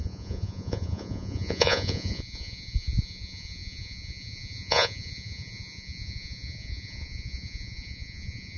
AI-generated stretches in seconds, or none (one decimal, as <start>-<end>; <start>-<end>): 0.0-8.6